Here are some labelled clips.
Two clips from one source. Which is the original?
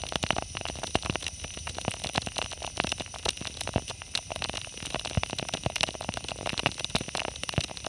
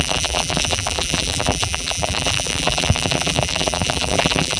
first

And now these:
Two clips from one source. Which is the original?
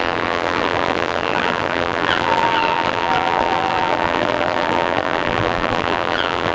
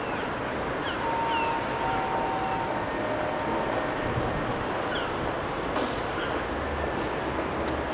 second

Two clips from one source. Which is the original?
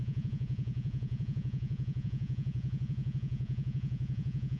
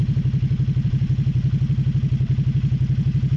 second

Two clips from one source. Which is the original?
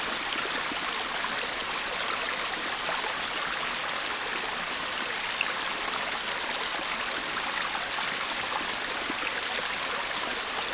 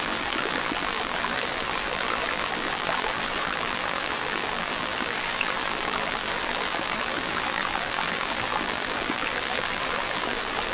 first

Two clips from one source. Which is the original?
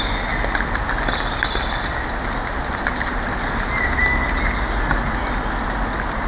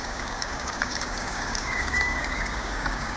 first